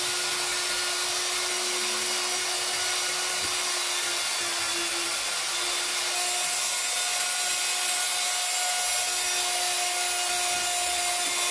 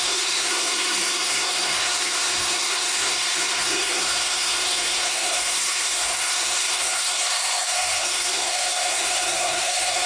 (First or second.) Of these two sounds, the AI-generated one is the second